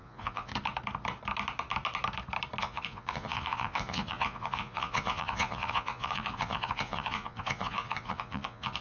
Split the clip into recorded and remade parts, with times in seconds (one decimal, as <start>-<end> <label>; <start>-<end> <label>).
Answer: 0.0-0.5 remade; 0.5-2.6 recorded; 2.6-8.8 remade